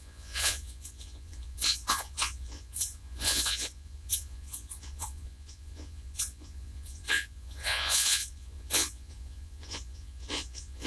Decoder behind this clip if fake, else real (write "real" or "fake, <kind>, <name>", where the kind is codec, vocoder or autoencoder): fake, vocoder, Vocos